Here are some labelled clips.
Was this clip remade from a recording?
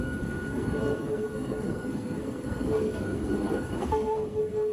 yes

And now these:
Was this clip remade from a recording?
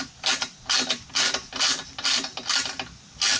no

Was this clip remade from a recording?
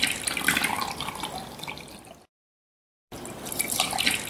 no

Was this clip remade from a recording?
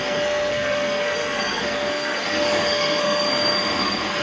yes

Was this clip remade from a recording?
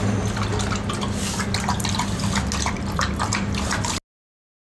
no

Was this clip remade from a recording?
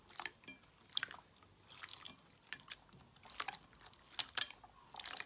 no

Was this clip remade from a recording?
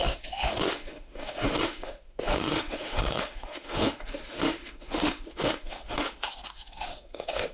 yes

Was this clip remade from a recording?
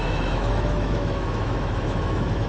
yes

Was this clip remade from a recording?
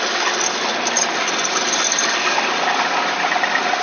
no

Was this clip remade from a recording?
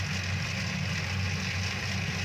no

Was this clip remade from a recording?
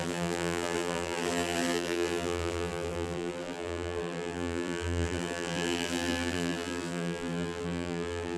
yes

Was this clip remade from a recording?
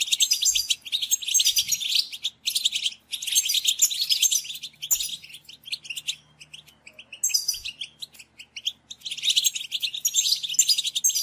no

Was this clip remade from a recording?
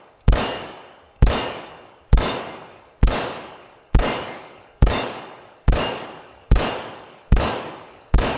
yes